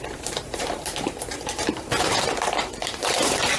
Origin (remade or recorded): remade